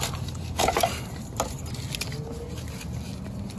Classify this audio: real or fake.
real